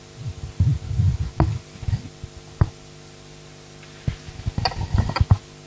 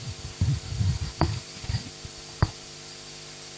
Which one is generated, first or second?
second